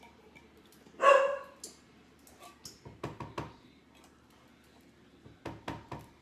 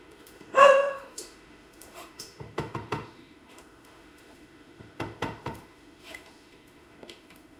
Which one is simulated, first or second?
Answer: second